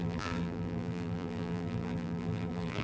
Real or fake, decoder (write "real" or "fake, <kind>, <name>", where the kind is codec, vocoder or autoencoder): fake, vocoder, BigVGAN v2